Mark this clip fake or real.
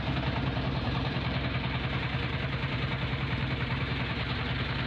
fake